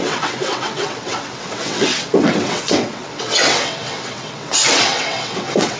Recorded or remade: remade